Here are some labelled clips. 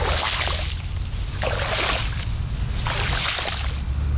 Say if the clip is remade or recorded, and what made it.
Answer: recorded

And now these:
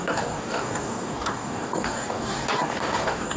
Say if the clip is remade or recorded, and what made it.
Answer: remade, codec, DAC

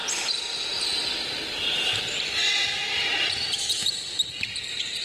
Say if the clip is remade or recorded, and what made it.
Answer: recorded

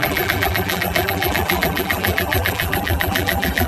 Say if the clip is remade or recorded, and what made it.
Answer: remade, vocoder, BigVGAN v2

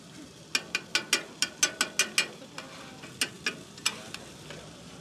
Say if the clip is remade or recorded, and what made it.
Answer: recorded